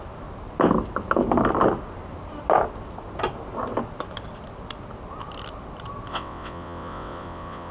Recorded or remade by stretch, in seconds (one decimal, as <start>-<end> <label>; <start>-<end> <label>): 0.0-6.1 recorded; 6.1-7.7 remade